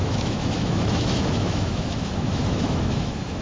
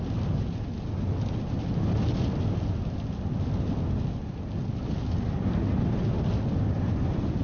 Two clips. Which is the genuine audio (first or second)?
second